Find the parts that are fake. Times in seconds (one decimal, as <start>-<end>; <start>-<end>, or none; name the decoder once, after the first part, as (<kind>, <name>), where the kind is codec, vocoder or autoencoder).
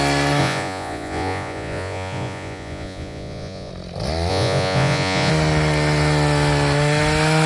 0.4-3.7 (vocoder, Vocos); 4.3-5.3